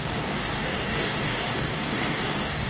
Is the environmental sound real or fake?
fake